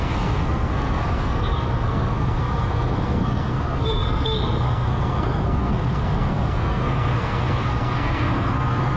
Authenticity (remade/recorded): remade